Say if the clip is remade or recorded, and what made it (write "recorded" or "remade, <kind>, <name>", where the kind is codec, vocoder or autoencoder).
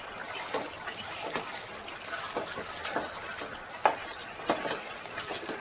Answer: recorded